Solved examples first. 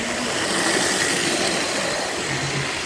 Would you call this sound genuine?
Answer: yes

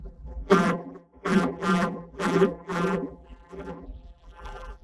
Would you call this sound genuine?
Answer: no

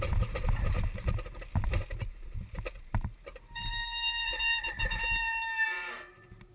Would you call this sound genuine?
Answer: yes